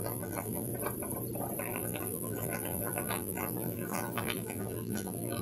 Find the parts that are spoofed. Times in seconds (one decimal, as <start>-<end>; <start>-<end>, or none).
0.0-0.7; 1.6-5.4